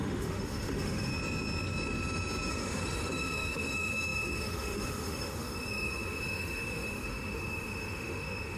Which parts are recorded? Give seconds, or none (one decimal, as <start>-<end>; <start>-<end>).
1.1-2.5